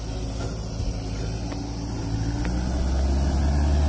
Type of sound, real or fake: real